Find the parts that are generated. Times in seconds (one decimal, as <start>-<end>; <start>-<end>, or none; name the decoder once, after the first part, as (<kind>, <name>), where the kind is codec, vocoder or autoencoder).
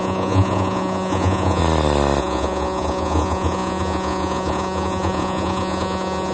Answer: 0.0-1.6 (vocoder, Vocos); 2.2-6.3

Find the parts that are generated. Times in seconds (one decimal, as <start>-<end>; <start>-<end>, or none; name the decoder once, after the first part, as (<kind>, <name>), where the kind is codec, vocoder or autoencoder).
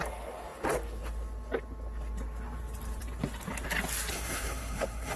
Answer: 4.1-5.2 (codec, SNAC)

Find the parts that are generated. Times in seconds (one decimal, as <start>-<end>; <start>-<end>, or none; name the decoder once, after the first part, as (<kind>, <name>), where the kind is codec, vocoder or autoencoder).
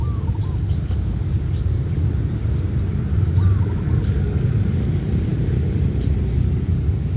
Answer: 0.0-2.0 (codec, DAC); 3.6-5.3; 6.4-7.2